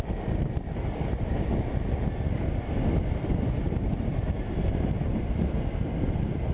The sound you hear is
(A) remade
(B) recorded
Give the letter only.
B